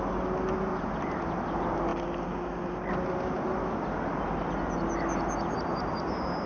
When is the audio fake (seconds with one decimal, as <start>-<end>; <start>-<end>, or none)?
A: 0.7-1.3